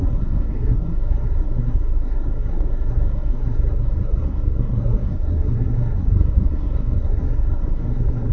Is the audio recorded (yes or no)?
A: no